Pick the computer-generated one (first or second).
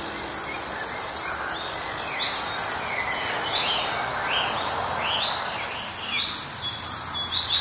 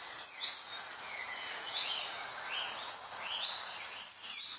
second